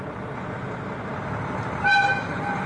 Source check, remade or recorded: recorded